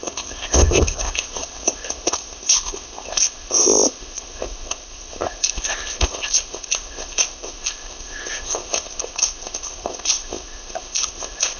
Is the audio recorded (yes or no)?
no